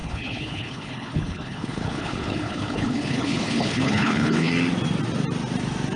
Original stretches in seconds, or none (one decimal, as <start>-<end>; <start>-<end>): 4.5-6.0